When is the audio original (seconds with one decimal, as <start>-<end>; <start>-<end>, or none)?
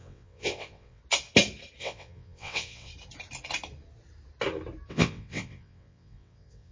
1.0-1.8; 2.9-4.9